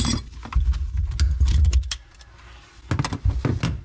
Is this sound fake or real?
real